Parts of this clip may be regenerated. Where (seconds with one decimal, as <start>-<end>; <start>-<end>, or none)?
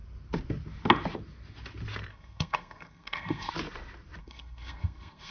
2.1-3.5; 4.2-5.3